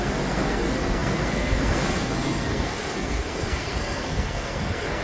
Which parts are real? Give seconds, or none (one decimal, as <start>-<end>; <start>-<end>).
none